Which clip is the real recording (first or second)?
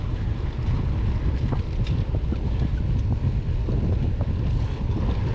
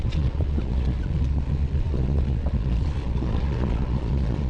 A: first